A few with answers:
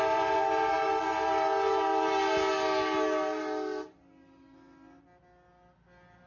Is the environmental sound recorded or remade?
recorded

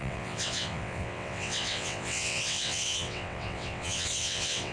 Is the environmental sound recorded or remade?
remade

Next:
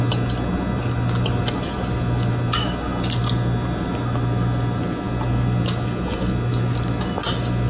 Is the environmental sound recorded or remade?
recorded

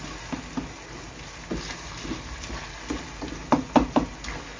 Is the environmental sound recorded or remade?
recorded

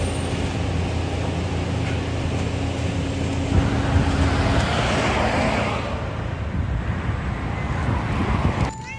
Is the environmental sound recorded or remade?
recorded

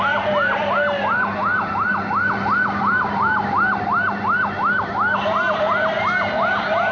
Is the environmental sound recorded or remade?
recorded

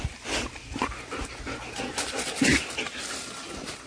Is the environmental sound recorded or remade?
recorded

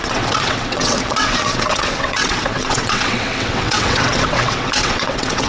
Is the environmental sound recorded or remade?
remade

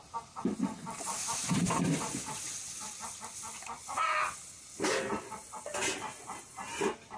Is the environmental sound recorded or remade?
recorded